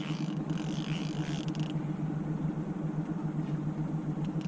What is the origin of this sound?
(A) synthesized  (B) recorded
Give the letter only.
B